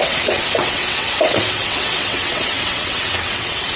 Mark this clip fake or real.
fake